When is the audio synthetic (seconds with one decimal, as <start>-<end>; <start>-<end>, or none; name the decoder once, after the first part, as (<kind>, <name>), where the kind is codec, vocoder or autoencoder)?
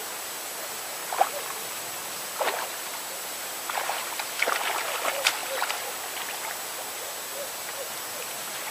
none